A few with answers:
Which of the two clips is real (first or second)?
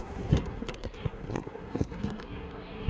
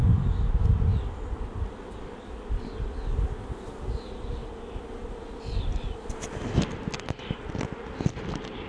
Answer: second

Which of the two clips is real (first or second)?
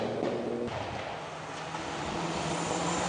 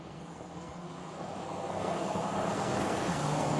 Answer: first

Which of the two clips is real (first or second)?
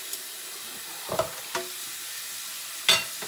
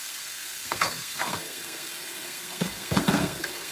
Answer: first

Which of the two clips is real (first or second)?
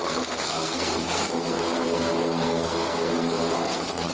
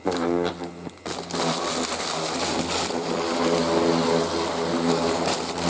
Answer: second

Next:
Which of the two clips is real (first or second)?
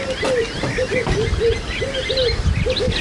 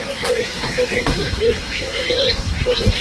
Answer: first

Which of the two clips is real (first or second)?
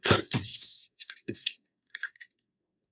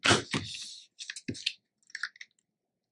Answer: second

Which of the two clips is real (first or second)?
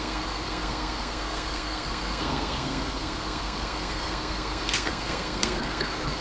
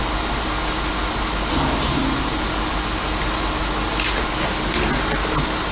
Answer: second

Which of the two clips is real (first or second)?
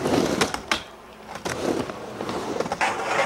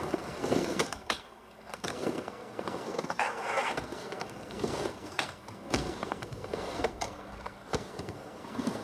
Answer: first